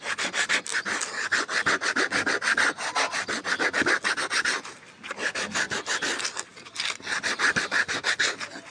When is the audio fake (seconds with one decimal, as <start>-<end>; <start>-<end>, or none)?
none